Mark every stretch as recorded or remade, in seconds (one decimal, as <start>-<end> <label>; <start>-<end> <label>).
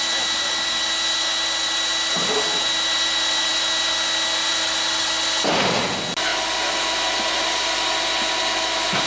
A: 0.0-9.1 recorded